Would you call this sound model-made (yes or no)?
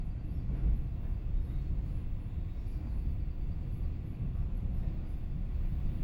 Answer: no